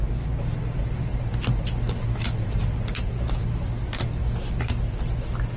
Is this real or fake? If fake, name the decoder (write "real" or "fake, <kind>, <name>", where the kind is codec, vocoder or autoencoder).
real